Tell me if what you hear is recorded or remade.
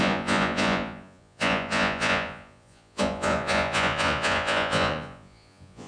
remade